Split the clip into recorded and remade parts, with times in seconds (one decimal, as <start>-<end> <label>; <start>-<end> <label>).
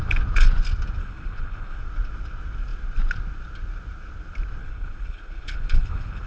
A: 0.0-1.0 recorded; 1.0-1.8 remade; 1.8-4.6 recorded; 4.6-6.3 remade